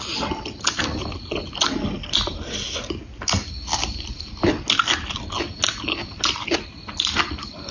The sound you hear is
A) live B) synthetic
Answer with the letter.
A